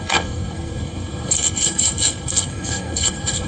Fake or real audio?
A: fake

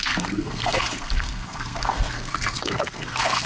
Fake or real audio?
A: fake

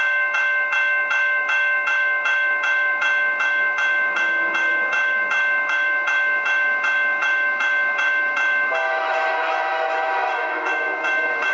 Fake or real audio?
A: fake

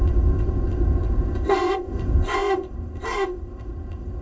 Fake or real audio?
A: fake